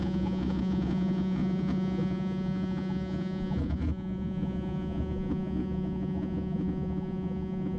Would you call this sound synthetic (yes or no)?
yes